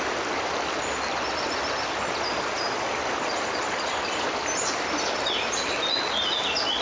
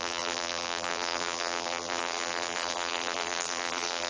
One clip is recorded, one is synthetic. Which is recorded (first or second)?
first